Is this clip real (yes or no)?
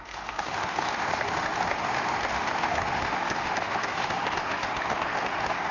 no